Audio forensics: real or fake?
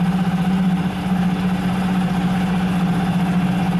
real